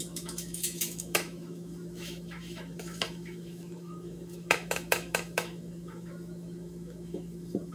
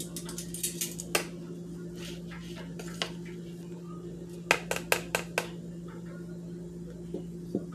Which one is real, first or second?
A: second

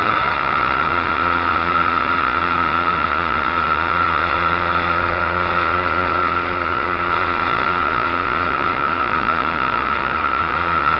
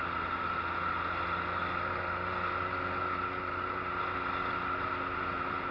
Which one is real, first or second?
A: second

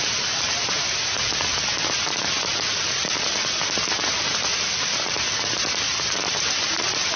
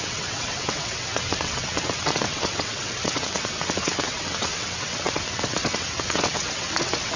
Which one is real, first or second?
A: first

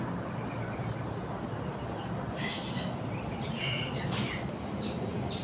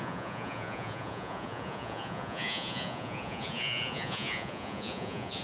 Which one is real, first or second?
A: first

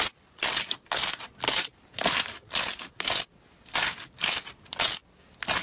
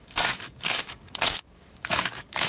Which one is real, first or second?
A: first